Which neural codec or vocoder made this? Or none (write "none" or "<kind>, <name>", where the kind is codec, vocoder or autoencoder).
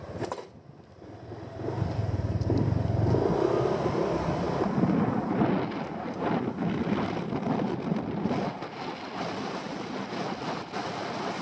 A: none